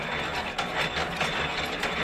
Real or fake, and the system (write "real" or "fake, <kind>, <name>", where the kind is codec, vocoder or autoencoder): real